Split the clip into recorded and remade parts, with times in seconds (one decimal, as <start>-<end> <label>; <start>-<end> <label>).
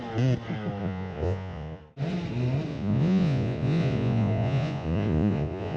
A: 0.0-0.8 recorded; 0.8-1.8 remade; 1.8-2.7 recorded; 2.7-5.8 remade